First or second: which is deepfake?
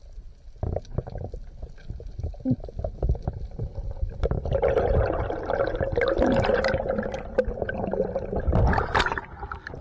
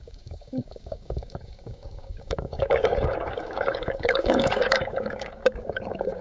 second